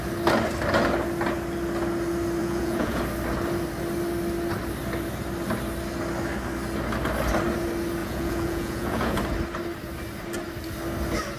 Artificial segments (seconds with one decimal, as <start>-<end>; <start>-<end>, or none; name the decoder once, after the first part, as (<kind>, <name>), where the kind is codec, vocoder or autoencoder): 2.4-3.0 (vocoder, Vocos); 8.0-9.2